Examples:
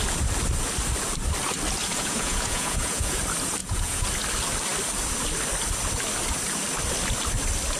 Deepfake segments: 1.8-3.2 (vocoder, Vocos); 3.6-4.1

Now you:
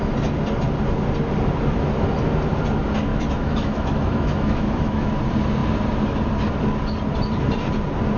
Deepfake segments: 3.1-5.1 (autoencoder, DAC-VAE)

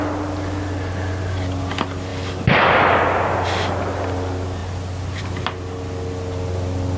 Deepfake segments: none

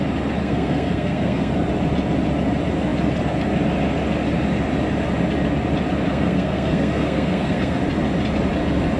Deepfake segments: 0.4-1.5 (codec, SNAC); 6.1-7.8

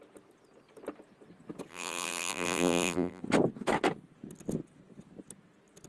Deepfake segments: 1.7-3.2 (vocoder, BigVGAN v2)

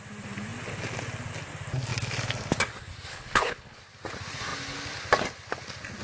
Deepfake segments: 3.1-3.8 (codec, HILCodec)